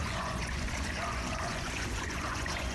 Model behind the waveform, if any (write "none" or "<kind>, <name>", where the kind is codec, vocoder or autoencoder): vocoder, Vocos